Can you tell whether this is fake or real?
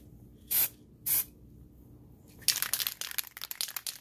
real